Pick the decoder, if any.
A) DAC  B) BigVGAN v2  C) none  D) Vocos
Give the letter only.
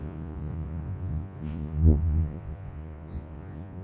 D